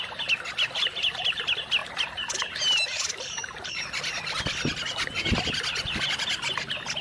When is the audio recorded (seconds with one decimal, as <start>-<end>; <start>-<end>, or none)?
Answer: 0.0-7.0